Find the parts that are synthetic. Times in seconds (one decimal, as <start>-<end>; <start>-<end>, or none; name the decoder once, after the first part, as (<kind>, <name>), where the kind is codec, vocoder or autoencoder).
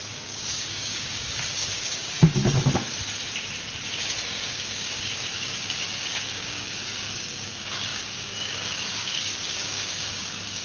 0.0-2.4 (codec, DAC); 3.9-10.6